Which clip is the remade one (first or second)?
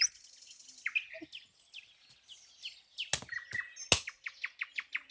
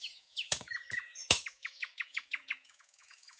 second